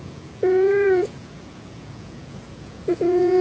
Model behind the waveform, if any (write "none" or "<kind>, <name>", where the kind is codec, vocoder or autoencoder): vocoder, Vocos